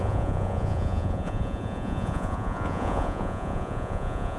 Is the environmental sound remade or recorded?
remade